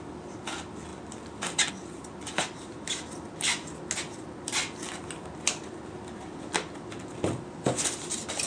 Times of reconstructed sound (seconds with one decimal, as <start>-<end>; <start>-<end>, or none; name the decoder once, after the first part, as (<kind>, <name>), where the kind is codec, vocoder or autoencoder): none